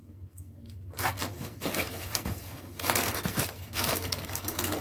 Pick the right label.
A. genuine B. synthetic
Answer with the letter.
B